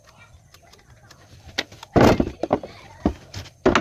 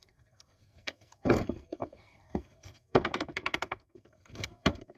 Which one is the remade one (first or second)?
second